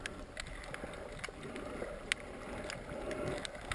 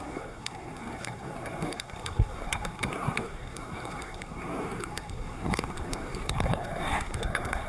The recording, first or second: first